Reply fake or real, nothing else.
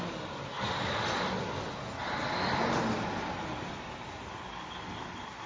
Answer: real